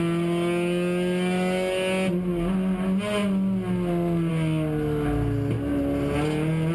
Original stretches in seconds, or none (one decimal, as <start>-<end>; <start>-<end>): 0.0-6.7